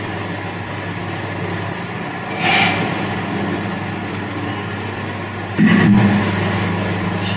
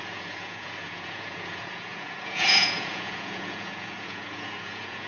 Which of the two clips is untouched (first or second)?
first